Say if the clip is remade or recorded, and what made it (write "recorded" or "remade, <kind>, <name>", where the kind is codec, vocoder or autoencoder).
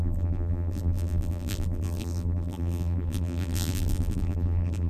remade, vocoder, BigVGAN v2